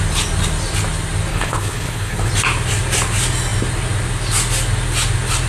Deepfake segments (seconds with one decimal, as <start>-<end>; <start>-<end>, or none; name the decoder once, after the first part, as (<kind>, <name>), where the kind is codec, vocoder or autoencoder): 1.3-2.3 (codec, HILCodec)